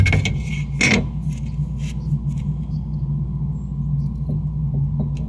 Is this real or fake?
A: real